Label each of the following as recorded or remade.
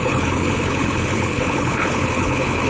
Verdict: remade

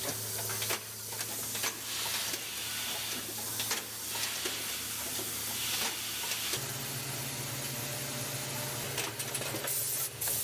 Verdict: recorded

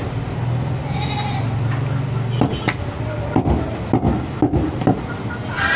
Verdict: recorded